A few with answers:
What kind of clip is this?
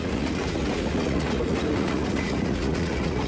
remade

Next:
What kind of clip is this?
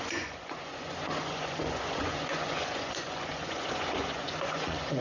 remade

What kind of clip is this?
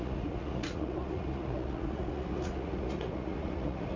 remade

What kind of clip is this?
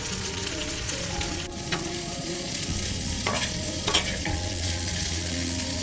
remade